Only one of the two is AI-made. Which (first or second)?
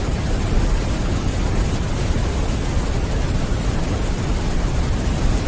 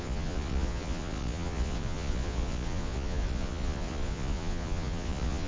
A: second